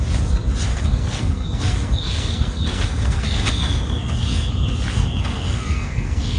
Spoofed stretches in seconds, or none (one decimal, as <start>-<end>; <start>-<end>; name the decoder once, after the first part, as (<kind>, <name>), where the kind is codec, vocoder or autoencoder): 0.7-4.5 (codec, SNAC); 4.9-6.4